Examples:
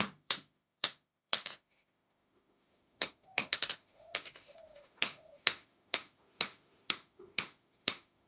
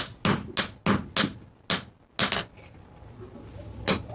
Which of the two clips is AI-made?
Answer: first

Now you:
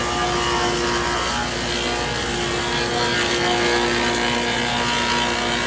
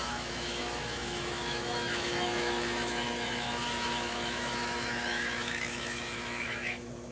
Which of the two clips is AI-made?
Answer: second